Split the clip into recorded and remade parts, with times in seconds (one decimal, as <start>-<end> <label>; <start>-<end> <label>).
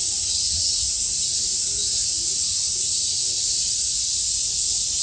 0.0-1.5 remade; 1.5-2.1 recorded; 2.1-5.0 remade